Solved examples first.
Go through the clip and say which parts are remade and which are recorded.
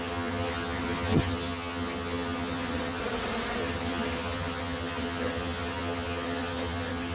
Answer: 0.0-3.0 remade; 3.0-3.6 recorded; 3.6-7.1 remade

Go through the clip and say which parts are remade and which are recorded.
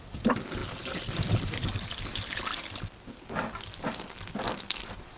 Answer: 0.0-5.2 recorded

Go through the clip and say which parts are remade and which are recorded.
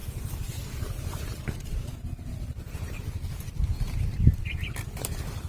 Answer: 0.0-2.2 remade; 2.2-5.5 recorded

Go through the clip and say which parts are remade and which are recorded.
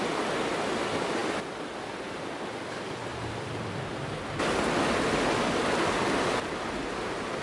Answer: 0.0-5.6 recorded; 5.6-7.0 remade; 7.0-7.4 recorded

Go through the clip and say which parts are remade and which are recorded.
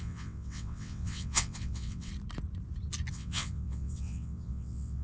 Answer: 0.0-2.1 remade; 2.1-3.1 recorded; 3.1-5.0 remade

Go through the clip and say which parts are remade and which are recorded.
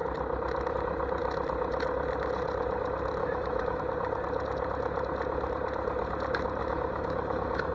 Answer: 0.0-3.2 recorded; 3.2-3.8 remade; 3.8-6.6 recorded; 6.6-7.7 remade